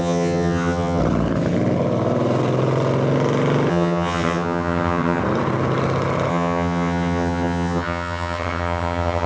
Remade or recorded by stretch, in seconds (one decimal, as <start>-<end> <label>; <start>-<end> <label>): 0.0-1.0 remade; 1.0-3.7 recorded; 3.7-5.2 remade; 5.2-6.3 recorded; 6.3-9.3 remade